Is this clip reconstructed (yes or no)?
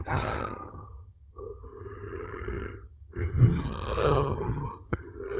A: yes